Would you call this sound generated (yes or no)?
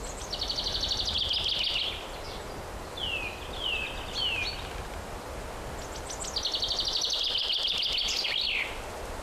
no